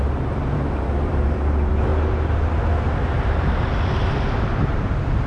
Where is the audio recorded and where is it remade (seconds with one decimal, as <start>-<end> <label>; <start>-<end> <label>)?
0.0-1.9 remade; 1.9-2.9 recorded; 2.9-5.3 remade